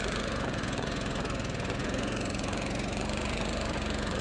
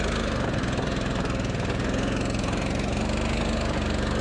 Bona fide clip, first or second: second